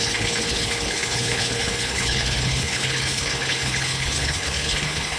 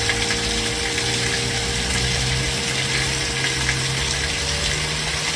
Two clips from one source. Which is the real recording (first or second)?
second